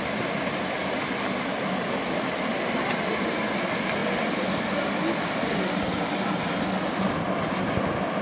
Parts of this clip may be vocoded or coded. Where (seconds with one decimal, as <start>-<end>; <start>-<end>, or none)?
1.5-3.0